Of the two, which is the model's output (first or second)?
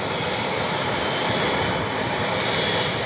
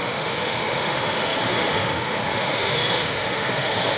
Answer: second